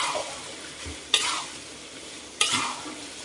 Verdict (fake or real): real